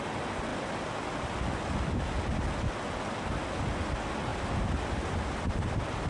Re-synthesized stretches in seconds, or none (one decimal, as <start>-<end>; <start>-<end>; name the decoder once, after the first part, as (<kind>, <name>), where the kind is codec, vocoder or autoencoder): 0.5-2.0 (vocoder, BigVGAN v2); 4.3-6.1